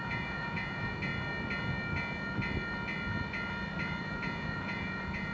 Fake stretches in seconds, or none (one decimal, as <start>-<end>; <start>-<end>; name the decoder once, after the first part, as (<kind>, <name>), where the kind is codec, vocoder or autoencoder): 0.0-1.1 (vocoder, Vocos); 4.0-5.3